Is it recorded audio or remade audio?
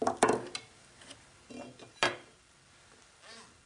recorded